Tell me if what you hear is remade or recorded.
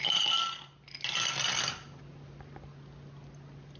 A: recorded